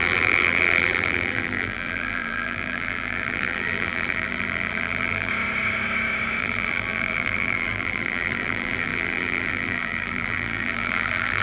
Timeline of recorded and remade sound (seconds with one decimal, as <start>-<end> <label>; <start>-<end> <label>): 0.0-5.3 remade; 5.3-6.4 recorded; 6.4-11.4 remade